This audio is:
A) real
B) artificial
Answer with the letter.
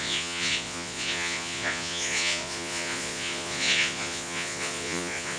B